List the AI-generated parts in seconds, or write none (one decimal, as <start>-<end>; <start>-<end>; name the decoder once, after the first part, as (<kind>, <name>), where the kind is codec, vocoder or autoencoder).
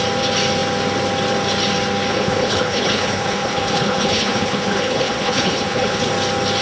2.1-6.1 (codec, HILCodec)